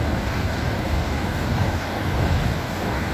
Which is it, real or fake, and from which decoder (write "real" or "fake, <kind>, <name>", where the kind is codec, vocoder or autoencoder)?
fake, codec, DAC